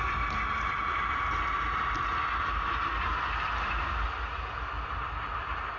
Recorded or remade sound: recorded